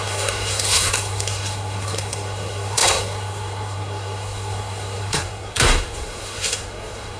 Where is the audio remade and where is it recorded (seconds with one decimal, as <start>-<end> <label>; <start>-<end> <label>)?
0.0-7.2 remade